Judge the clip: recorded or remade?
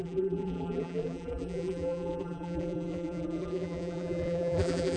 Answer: remade